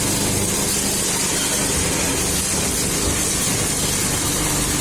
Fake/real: real